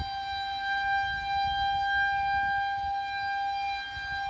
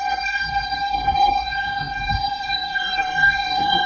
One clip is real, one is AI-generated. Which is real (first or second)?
first